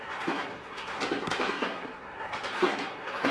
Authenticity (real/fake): fake